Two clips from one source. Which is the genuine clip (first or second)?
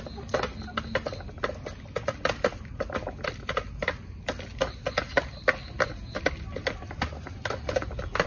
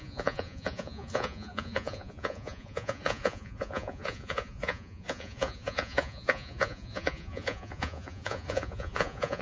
first